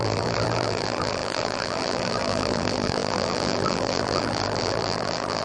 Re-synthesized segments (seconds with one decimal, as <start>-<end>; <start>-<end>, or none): 0.0-5.4